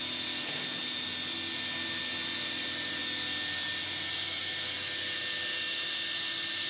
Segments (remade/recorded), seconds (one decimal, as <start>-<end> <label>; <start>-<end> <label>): 0.0-6.7 recorded